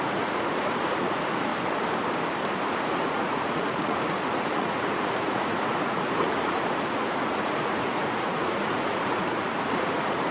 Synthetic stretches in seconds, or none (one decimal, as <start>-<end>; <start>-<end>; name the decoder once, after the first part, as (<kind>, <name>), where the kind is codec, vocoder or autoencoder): 0.0-1.5 (vocoder, Vocos); 2.6-10.3